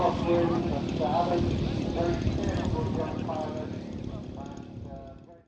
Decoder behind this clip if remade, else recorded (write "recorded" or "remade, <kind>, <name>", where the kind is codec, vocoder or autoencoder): recorded